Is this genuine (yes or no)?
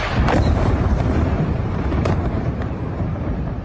no